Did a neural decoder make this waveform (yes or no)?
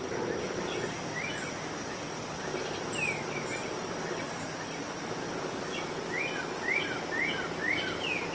no